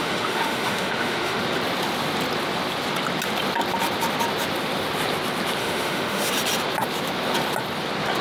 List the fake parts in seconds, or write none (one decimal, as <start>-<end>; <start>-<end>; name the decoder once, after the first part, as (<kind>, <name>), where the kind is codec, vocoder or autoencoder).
0.0-1.4 (autoencoder, DAC-VAE); 5.6-6.3